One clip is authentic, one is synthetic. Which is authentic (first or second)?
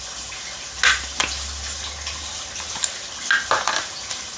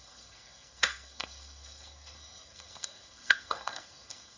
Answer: first